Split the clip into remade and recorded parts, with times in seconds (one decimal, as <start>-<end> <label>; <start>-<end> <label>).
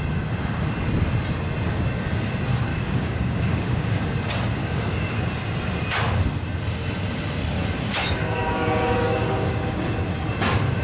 0.0-2.7 recorded; 2.7-4.0 remade; 4.0-4.6 recorded; 4.6-5.1 remade; 5.1-8.0 recorded; 8.0-9.8 remade; 9.8-10.8 recorded